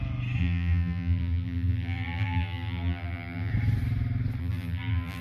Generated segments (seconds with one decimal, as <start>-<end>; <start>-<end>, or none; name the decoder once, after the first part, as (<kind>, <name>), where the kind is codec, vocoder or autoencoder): 0.4-3.5 (vocoder, BigVGAN v2); 4.4-5.2

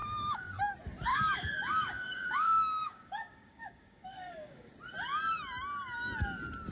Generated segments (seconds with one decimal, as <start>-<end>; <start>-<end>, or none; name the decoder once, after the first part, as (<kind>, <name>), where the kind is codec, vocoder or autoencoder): 0.0-0.6 (codec, DAC); 1.1-4.7

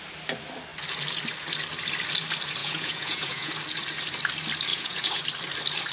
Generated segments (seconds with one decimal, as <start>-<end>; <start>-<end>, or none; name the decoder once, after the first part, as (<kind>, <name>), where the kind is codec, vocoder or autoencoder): 2.6-3.5 (vocoder, Vocos); 4.7-5.2

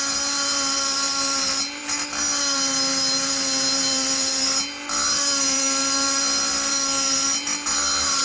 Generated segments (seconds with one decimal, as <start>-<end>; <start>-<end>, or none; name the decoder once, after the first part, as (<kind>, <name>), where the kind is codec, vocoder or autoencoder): none

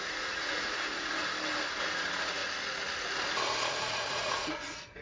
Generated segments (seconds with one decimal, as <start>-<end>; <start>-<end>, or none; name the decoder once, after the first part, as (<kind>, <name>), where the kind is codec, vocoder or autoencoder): 0.0-1.2 (vocoder, Vocos); 1.8-2.4; 3.7-5.0